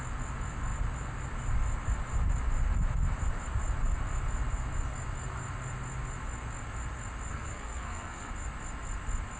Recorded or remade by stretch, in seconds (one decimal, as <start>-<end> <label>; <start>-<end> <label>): 0.0-7.3 recorded; 7.3-8.3 remade; 8.3-9.4 recorded